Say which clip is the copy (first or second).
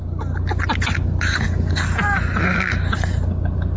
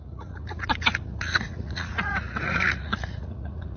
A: second